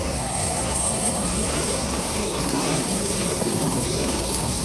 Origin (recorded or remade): remade